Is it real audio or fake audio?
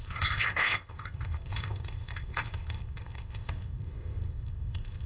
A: fake